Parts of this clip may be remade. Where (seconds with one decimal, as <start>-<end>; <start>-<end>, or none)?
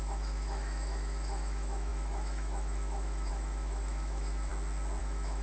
0.0-4.5; 5.0-5.4